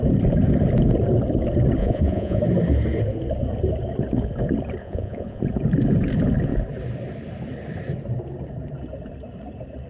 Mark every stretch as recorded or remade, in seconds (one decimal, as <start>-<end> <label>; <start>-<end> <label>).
0.0-1.8 recorded; 1.8-2.4 remade; 2.4-4.8 recorded; 4.8-5.4 remade; 5.4-9.9 recorded